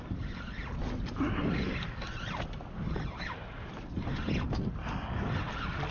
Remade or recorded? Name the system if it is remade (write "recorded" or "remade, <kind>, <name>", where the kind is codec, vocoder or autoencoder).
recorded